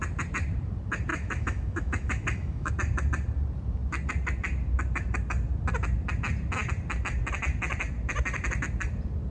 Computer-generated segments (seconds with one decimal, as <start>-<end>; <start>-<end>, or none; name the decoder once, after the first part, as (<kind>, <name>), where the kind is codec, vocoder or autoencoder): 1.1-2.7 (autoencoder, DAC-VAE)